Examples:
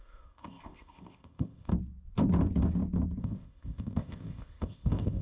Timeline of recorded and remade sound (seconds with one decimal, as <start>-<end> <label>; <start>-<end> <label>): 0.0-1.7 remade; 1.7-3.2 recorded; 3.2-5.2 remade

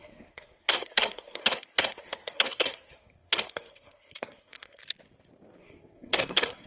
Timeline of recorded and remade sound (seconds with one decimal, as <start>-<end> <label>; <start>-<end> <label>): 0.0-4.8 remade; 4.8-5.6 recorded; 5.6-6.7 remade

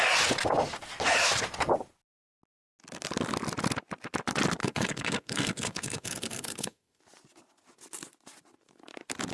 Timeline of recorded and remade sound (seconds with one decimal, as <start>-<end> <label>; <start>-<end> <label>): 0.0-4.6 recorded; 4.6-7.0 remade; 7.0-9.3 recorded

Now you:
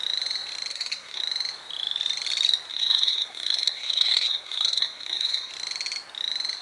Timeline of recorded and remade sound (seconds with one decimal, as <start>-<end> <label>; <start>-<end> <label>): 0.0-0.7 recorded; 0.7-1.2 remade; 1.2-2.7 recorded; 2.7-5.5 remade; 5.5-6.6 recorded

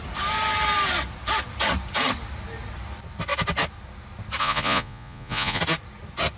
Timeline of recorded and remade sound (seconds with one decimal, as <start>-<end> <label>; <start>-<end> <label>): 0.0-4.4 recorded; 4.4-5.6 remade; 5.6-6.4 recorded

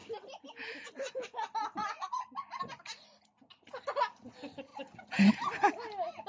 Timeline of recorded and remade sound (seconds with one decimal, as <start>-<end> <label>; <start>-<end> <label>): 0.0-1.8 recorded; 1.8-2.5 remade; 2.5-6.3 recorded

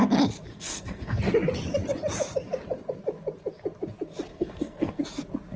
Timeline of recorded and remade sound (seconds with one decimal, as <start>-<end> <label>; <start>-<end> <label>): 0.0-0.5 recorded; 0.5-1.2 remade; 1.2-4.3 recorded; 4.3-5.0 remade; 5.0-5.6 recorded